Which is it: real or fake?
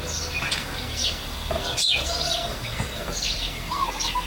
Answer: fake